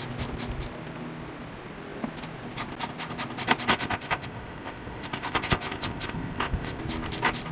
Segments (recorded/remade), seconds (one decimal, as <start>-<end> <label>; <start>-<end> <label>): 0.0-3.7 recorded; 3.7-6.8 remade; 6.8-7.5 recorded